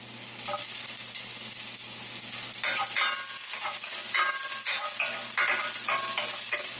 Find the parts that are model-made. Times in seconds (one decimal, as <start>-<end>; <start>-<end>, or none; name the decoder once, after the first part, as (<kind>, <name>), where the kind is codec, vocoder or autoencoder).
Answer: none